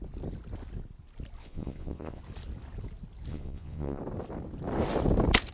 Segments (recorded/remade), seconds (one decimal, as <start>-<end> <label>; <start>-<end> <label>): 0.0-1.4 recorded; 1.4-2.2 remade; 2.2-3.3 recorded; 3.3-4.0 remade; 4.0-5.5 recorded